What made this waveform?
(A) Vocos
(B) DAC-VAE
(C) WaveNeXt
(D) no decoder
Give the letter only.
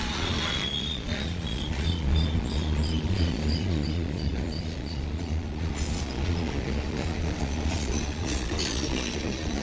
A